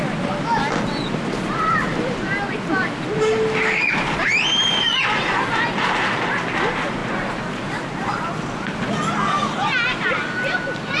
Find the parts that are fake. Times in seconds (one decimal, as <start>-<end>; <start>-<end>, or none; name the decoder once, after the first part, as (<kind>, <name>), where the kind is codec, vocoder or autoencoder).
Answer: none